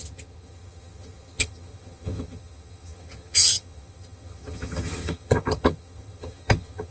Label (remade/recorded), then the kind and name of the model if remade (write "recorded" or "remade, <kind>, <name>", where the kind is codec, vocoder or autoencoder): remade, vocoder, HiFi-GAN